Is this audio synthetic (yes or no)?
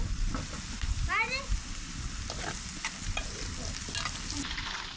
no